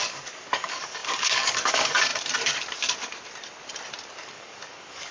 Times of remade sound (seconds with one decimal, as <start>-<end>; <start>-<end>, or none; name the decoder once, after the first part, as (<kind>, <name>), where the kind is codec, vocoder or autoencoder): 0.0-2.1 (codec, DAC); 4.1-5.1